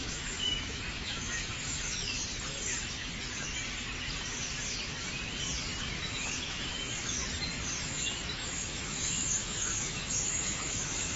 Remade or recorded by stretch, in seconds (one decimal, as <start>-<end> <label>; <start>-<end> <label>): 0.0-2.2 remade; 2.2-5.8 recorded; 5.8-7.2 remade; 7.2-7.8 recorded; 7.8-11.2 remade